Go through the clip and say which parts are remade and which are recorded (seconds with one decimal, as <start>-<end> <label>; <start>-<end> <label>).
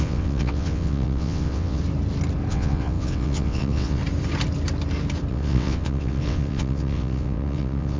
0.0-1.8 remade; 1.8-2.5 recorded; 2.5-4.0 remade; 4.0-5.3 recorded; 5.3-8.0 remade